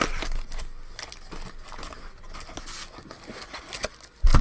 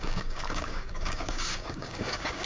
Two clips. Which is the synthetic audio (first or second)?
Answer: second